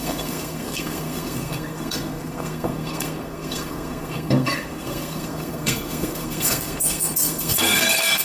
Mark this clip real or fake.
fake